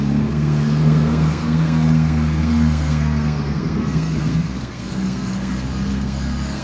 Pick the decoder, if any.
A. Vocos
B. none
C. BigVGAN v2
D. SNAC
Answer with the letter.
D